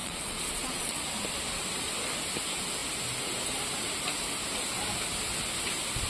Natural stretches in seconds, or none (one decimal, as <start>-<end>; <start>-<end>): 1.0-6.1